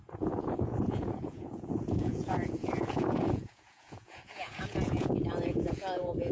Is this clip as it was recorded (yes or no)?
no